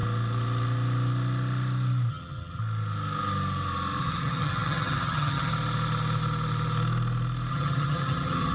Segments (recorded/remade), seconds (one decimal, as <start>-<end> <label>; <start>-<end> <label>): 0.0-2.1 recorded; 2.1-2.6 remade; 2.6-4.0 recorded; 4.0-5.5 remade; 5.5-7.5 recorded; 7.5-8.5 remade